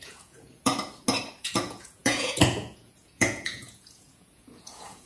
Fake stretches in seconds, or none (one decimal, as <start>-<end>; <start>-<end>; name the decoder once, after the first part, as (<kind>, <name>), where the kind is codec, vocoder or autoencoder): 0.0-0.7 (vocoder, Vocos); 1.4-5.1